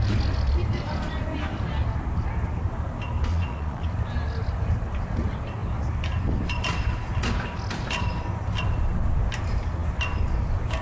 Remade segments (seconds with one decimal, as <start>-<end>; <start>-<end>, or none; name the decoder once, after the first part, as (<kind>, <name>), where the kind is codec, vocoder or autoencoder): 3.3-3.9 (vocoder, Vocos)